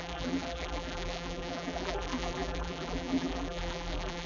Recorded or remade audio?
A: remade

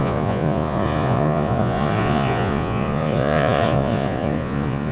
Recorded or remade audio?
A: remade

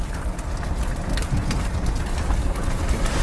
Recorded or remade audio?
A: recorded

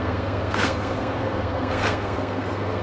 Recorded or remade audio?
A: remade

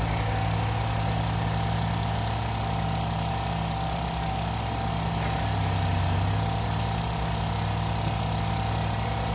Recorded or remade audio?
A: recorded